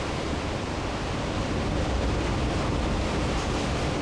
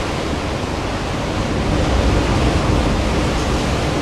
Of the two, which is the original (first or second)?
second